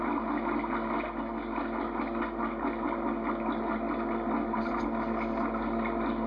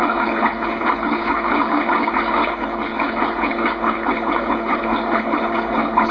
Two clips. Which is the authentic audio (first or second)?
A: first